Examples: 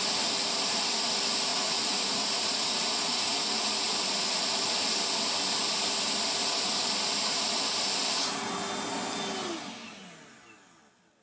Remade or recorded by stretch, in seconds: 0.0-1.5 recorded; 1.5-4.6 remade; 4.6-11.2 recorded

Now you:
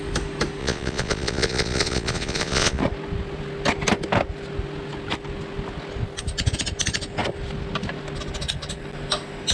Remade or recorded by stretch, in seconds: 0.0-0.6 recorded; 0.6-2.8 remade; 2.8-9.5 recorded